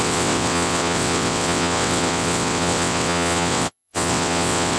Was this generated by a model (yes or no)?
yes